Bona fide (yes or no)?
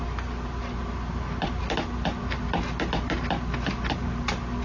yes